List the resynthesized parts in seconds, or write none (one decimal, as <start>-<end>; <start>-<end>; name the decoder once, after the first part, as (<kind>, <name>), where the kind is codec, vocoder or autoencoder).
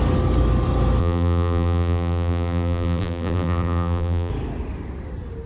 1.0-4.3 (vocoder, BigVGAN v2)